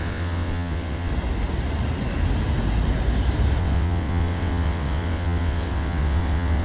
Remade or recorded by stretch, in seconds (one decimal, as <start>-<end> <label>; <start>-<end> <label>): 0.0-1.1 remade; 1.1-3.6 recorded; 3.6-6.6 remade